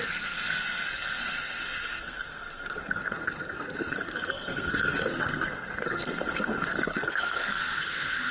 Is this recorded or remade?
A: remade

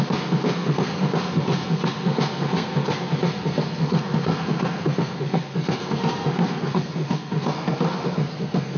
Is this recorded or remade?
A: remade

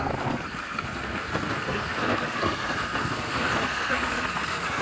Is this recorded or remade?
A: remade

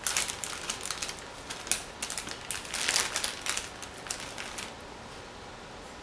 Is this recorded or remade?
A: recorded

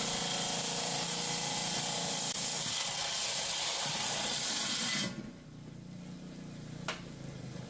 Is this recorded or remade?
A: recorded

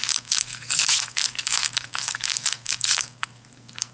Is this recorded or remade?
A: remade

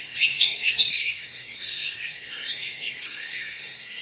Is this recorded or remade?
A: remade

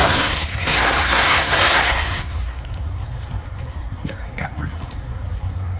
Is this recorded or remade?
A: remade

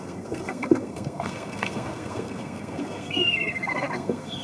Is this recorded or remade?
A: remade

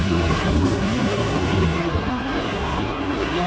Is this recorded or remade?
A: remade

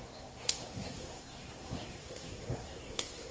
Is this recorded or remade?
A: remade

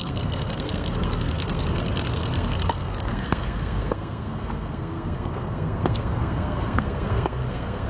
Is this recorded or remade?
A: remade